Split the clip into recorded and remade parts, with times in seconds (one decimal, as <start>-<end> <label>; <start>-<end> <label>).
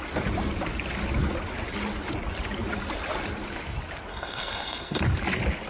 0.0-4.1 recorded; 4.1-5.0 remade; 5.0-5.7 recorded